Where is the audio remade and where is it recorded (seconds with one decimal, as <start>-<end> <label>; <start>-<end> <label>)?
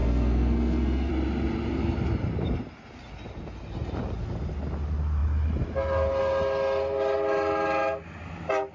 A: 0.0-1.1 remade; 1.1-8.7 recorded